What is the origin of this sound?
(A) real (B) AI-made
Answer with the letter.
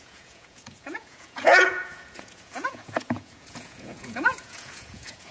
B